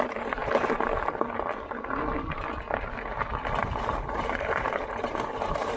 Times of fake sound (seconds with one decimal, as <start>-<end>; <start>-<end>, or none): 3.6-5.8